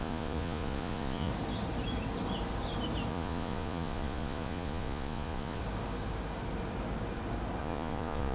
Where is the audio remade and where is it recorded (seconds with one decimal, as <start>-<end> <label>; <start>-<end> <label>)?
0.0-1.3 remade; 1.3-3.1 recorded; 3.1-5.6 remade; 5.6-7.6 recorded; 7.6-8.3 remade